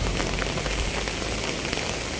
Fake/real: real